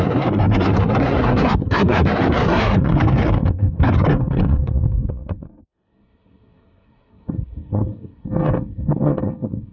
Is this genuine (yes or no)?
no